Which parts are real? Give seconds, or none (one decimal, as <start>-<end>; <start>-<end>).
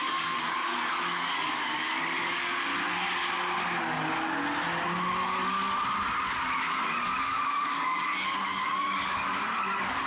2.7-6.6